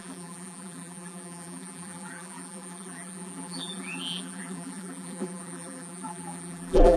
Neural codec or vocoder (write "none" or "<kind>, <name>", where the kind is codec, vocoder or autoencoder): vocoder, BigVGAN v2